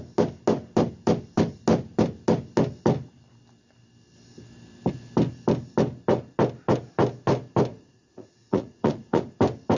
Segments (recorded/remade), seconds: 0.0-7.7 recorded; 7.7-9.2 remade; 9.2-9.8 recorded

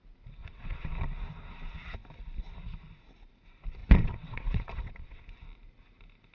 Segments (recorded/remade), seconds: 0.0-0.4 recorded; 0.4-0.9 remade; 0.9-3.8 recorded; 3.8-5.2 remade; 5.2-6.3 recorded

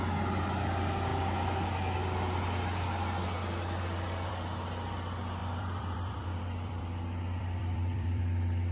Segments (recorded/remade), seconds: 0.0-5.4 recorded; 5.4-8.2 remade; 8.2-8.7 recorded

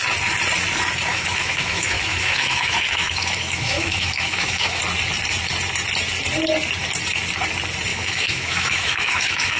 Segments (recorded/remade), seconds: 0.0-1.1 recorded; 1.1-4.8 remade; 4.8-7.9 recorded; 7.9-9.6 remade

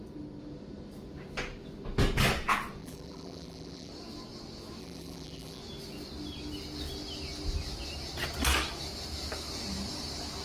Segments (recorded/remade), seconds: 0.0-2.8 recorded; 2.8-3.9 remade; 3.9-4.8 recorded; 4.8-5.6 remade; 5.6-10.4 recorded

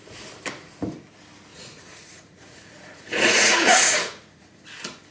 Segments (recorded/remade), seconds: 0.0-1.5 recorded; 1.5-4.6 remade; 4.6-5.1 recorded

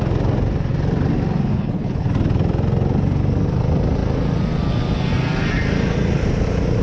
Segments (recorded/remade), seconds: 0.0-1.5 recorded; 1.5-2.1 remade; 2.1-6.8 recorded

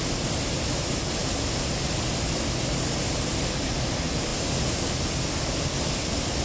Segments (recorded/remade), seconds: 0.0-6.4 recorded